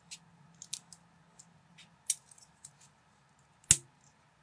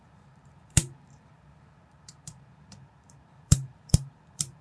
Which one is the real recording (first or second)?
first